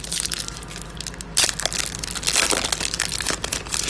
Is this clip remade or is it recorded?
recorded